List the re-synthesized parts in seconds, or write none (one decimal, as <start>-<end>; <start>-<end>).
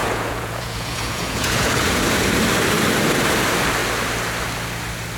0.0-2.0